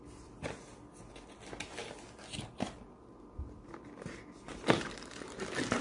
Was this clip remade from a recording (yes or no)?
no